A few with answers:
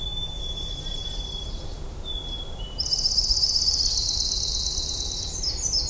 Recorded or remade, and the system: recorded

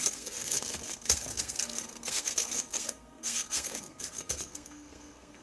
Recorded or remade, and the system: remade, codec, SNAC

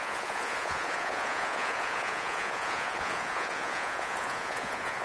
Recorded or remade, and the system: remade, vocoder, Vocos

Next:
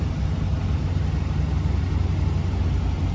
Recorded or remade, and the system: recorded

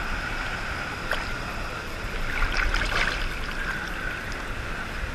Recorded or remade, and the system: recorded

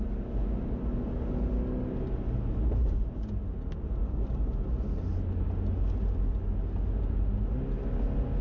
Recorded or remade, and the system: recorded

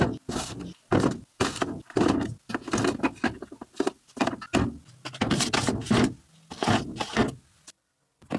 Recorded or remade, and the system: recorded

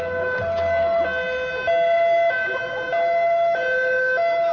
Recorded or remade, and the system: recorded